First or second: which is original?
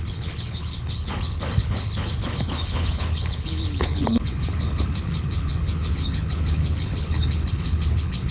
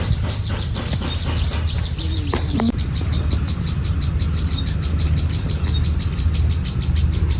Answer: second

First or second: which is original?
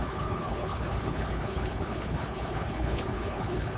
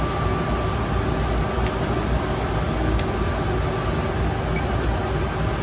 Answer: second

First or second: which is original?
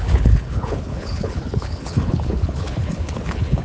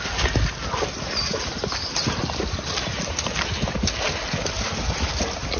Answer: second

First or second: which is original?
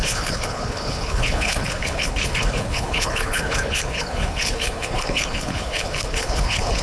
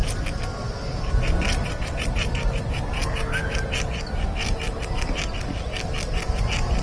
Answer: second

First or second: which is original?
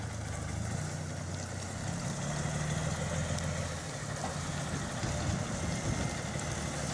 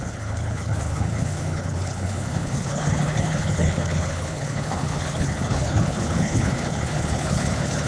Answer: first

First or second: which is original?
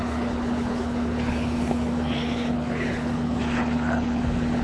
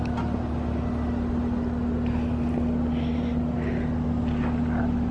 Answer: second